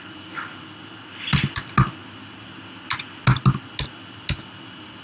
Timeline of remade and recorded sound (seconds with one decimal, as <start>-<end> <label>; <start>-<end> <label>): 0.0-2.0 remade; 2.0-5.0 recorded